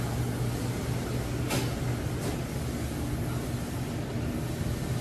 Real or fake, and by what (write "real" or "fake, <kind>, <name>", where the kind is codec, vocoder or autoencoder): real